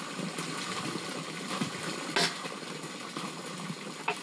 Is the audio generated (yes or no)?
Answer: no